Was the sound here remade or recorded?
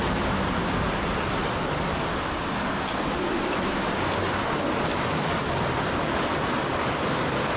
recorded